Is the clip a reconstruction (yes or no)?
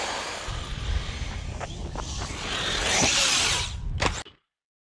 no